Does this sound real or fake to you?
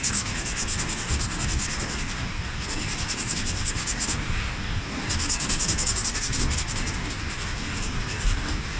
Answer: fake